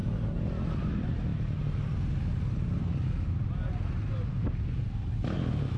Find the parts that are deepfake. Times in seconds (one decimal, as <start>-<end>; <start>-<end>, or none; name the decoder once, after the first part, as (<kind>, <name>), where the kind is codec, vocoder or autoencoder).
none